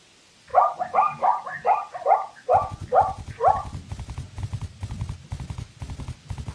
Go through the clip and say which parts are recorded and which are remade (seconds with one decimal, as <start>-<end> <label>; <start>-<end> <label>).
0.0-6.5 recorded